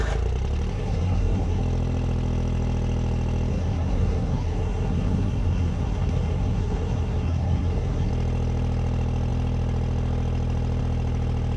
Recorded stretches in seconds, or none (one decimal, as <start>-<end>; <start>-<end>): 0.0-0.7; 1.6-3.5; 8.1-11.6